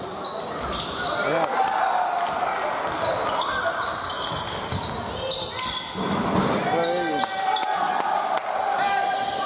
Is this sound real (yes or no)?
yes